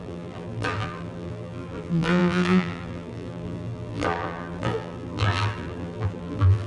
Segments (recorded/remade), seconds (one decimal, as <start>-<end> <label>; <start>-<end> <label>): 0.0-6.7 remade